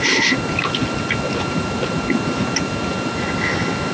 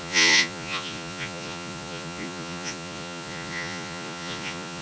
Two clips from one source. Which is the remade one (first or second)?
second